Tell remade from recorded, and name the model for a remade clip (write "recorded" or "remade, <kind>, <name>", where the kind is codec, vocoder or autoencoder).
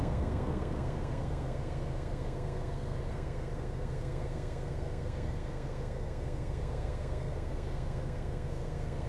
remade, codec, SNAC